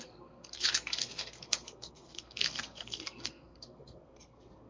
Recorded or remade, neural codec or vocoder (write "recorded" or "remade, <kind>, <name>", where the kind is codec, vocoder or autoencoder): remade, codec, SNAC